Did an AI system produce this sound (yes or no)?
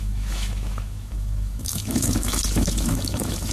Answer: yes